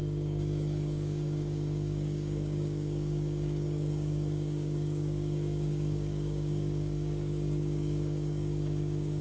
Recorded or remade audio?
remade